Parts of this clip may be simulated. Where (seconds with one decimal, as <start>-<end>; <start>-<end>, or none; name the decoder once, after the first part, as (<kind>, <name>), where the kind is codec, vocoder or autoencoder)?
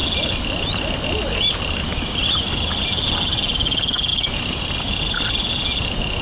4.1-5.5 (vocoder, BigVGAN v2)